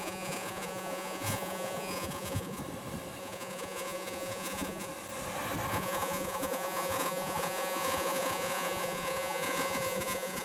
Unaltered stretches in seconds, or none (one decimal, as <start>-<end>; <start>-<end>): 2.6-3.2; 4.9-5.7